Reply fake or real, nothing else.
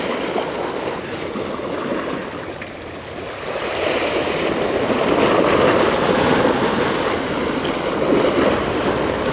real